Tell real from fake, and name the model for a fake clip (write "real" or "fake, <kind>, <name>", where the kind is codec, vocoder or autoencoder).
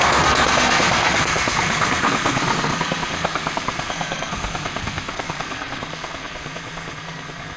fake, codec, SNAC